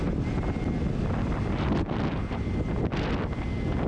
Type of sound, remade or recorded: recorded